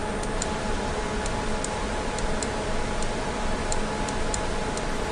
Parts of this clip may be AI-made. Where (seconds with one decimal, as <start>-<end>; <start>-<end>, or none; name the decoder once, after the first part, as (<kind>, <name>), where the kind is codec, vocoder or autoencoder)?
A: none

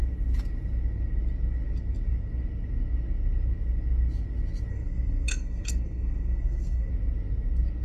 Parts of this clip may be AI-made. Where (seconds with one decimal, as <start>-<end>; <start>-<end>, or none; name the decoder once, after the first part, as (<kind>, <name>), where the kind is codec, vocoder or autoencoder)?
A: 4.7-6.9 (codec, SNAC)

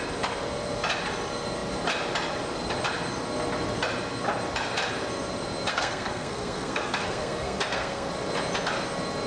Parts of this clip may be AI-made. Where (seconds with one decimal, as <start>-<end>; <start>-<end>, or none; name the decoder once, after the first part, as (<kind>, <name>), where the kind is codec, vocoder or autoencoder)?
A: 5.7-8.1 (codec, SNAC)

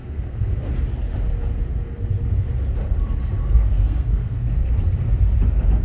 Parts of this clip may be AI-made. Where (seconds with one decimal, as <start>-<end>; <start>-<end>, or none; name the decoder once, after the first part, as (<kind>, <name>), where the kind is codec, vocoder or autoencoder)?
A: 0.0-0.7 (codec, SNAC); 3.4-4.7

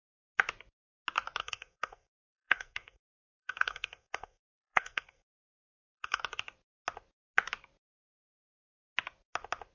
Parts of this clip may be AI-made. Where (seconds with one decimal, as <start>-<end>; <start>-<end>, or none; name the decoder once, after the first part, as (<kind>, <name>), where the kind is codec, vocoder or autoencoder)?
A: 1.4-6.2 (codec, SNAC)